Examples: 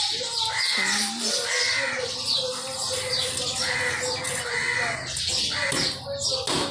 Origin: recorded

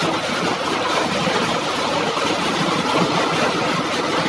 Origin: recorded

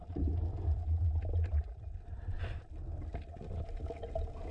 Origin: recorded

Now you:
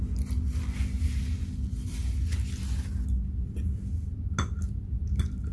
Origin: recorded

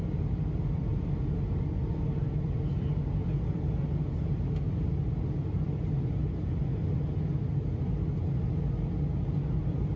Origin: recorded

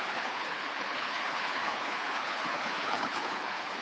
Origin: remade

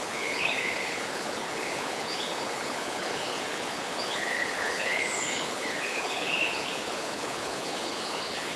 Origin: remade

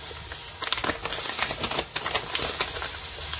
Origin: recorded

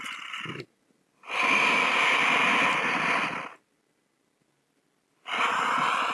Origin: recorded